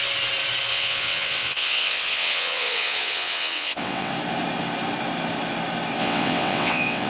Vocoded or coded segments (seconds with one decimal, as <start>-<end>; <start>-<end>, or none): 0.7-4.1; 6.0-7.1